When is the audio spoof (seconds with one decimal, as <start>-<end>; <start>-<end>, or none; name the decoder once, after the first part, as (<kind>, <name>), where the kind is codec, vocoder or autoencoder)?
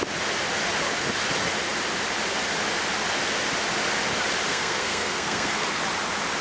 4.5-5.8 (codec, SNAC)